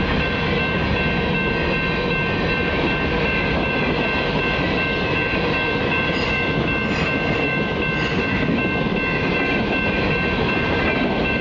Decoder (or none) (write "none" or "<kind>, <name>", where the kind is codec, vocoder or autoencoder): none